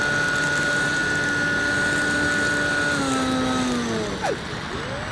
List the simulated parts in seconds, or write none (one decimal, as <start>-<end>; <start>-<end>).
none